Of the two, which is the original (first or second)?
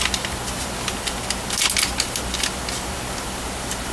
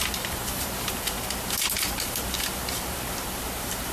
first